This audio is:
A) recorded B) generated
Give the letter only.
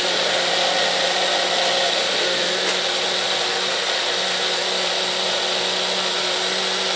A